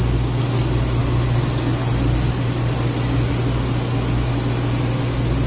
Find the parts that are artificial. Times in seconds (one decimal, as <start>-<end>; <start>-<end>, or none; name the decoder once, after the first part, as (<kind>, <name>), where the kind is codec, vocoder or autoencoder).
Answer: none